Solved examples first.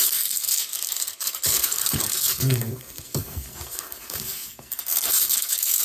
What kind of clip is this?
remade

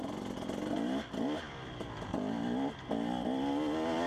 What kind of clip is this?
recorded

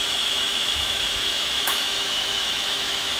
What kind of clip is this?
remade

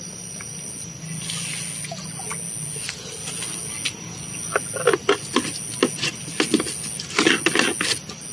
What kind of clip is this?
recorded